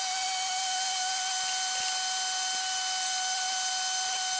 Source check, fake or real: real